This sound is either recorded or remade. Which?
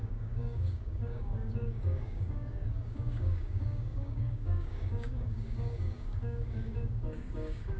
remade